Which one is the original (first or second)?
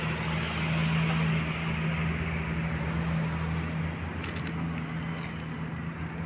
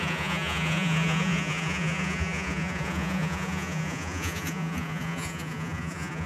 first